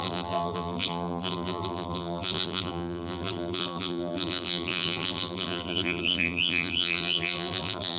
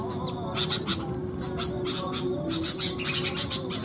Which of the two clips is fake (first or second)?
first